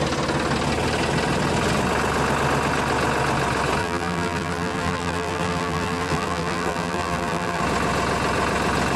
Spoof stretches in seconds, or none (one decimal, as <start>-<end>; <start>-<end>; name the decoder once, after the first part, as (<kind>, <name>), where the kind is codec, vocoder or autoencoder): 3.8-7.6 (vocoder, BigVGAN v2)